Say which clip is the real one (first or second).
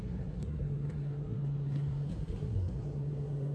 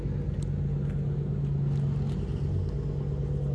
second